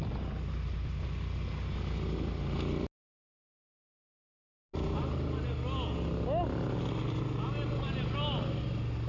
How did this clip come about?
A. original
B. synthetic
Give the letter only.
A